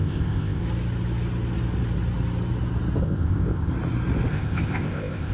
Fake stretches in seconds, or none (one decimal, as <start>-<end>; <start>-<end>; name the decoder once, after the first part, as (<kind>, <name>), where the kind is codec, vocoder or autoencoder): 0.0-0.6 (codec, ZipCodec); 3.0-3.7; 4.3-5.3